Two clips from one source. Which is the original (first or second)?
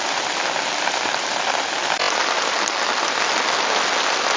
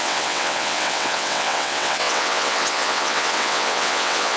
first